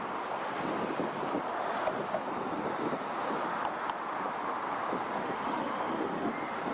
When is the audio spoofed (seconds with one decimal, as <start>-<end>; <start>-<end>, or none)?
5.2-6.3